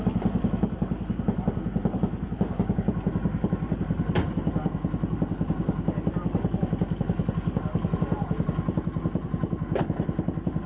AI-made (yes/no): no